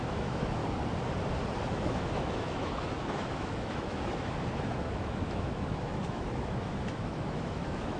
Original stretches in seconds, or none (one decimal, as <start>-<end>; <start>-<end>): 0.6-1.7

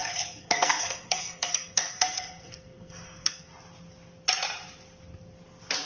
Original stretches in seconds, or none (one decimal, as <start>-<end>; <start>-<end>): 3.5-5.9